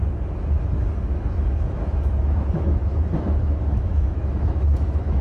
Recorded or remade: remade